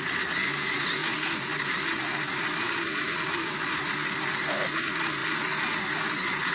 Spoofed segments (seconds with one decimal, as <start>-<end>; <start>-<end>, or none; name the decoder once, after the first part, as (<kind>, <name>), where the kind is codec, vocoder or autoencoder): 1.0-4.6 (vocoder, BigVGAN v2)

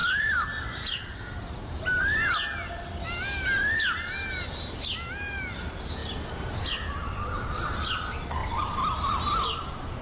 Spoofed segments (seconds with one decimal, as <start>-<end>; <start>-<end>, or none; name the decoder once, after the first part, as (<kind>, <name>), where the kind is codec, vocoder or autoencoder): 0.0-2.0 (vocoder, BigVGAN v2)

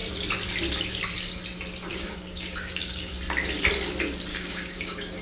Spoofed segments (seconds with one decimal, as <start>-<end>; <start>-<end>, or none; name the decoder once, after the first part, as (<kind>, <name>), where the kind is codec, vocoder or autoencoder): 1.9-3.1 (codec, DAC); 4.3-5.2

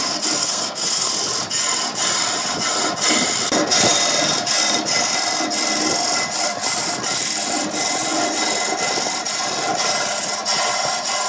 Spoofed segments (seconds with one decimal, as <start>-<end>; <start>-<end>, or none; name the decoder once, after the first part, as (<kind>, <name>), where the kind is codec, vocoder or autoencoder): 0.4-1.1 (codec, SNAC)

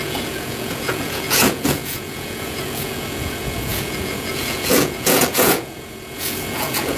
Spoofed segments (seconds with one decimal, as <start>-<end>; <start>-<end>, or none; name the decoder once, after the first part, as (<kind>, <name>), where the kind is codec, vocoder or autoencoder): 0.0-7.0 (vocoder, Vocos)